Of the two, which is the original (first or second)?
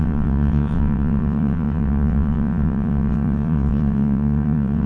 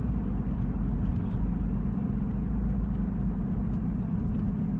second